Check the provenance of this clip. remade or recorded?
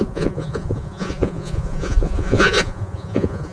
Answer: remade